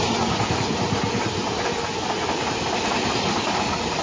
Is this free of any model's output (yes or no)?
yes